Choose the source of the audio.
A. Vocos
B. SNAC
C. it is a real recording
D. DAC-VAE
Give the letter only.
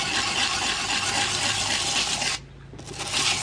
C